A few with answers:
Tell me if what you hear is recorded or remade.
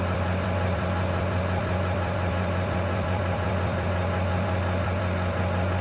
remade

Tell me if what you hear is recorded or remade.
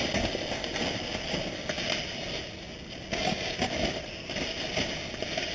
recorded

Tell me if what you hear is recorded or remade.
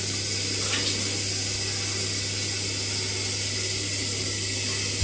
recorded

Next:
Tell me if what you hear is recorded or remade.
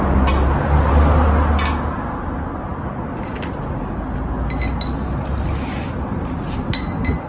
recorded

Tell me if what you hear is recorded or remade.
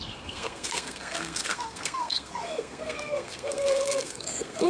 remade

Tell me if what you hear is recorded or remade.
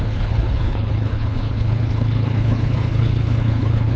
remade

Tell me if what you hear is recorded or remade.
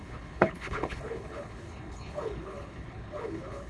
remade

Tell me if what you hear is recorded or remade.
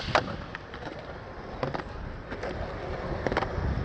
recorded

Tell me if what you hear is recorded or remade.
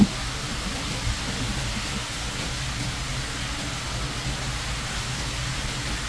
recorded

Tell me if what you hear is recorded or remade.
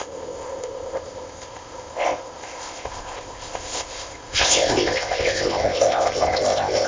remade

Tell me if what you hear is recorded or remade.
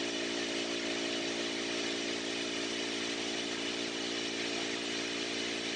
recorded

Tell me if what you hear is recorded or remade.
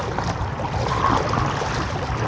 recorded